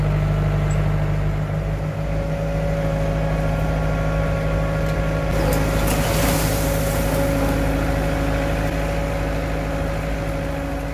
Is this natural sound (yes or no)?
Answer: yes